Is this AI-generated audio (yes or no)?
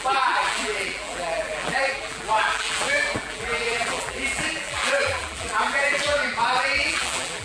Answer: yes